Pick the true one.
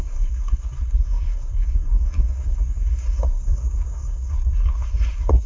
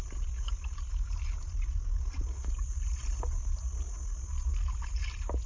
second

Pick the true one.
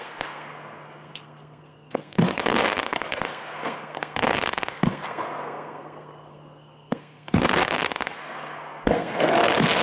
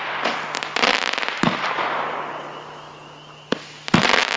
second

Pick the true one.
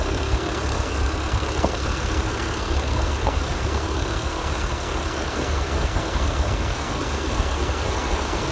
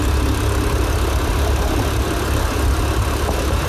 second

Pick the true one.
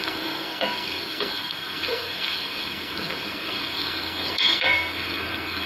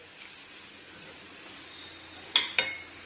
second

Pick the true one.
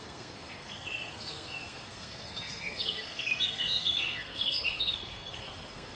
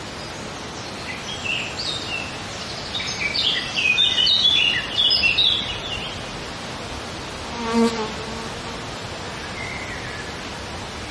second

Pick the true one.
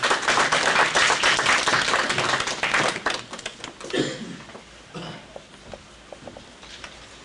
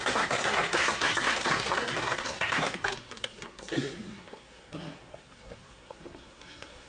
first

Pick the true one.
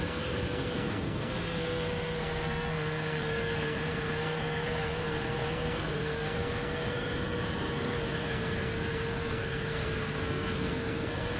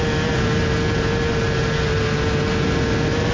second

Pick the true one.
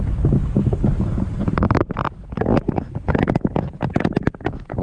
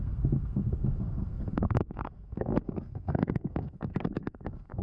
first